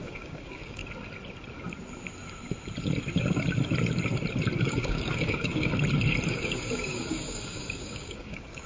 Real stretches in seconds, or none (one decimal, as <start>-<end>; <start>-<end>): 0.8-4.6; 5.7-6.3